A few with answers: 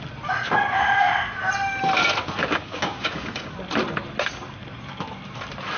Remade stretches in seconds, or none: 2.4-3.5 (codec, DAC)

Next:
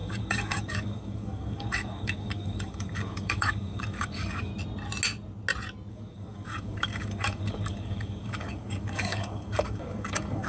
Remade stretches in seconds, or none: 0.0-4.5 (codec, DAC); 5.9-10.5

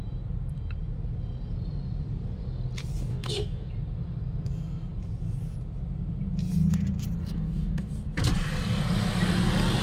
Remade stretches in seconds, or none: 3.1-3.7 (codec, DAC); 7.2-7.9

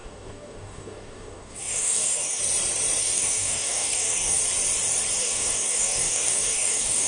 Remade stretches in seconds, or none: 0.0-2.4 (codec, DAC); 3.0-4.4; 5.2-7.1

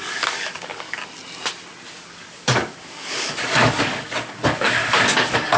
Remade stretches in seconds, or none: 0.0-1.0 (codec, DAC); 1.9-5.6